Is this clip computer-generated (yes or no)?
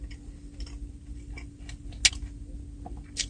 no